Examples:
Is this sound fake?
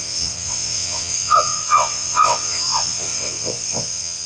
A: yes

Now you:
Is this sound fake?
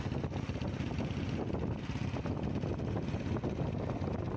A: no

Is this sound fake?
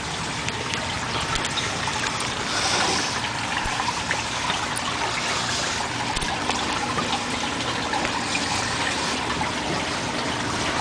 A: no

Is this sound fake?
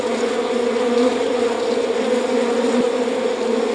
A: no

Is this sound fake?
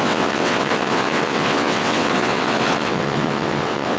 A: yes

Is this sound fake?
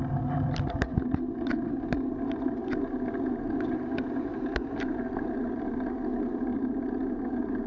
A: no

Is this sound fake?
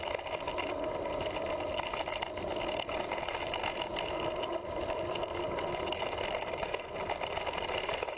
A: no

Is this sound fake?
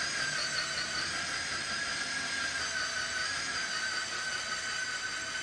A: no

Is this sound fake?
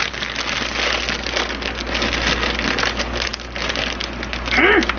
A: no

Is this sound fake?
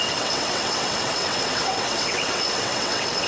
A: yes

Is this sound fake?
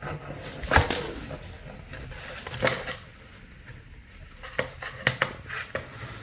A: no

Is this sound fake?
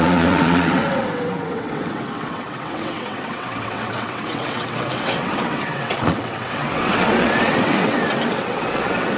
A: yes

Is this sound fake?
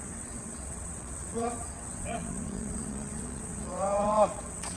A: yes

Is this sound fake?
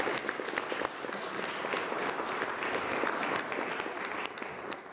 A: no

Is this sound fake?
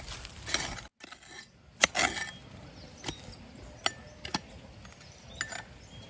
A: no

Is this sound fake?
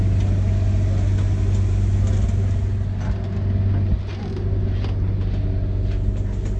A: no